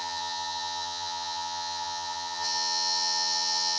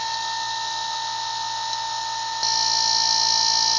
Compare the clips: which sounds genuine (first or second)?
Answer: second